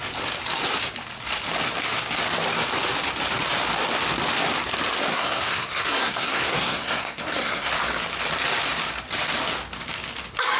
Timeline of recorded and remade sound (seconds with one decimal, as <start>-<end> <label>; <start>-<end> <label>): 0.0-5.1 recorded; 5.1-7.7 remade; 7.7-10.6 recorded